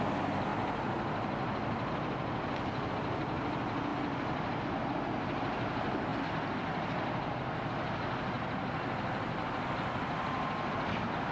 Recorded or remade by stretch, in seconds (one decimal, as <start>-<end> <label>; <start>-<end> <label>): 0.0-11.3 recorded